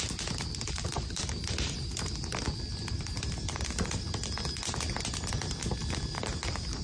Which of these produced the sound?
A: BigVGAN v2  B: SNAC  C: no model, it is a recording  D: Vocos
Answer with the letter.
C